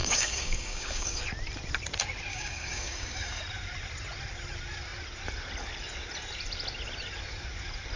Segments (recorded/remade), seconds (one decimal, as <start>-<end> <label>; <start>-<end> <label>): 0.0-1.2 remade; 1.2-2.3 recorded; 2.3-3.4 remade; 3.4-8.0 recorded